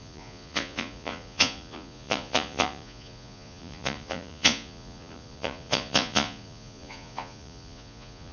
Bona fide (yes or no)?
no